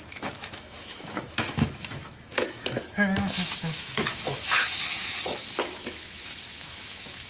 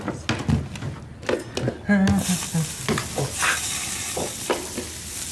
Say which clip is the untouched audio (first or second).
second